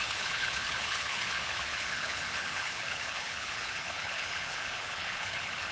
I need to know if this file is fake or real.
fake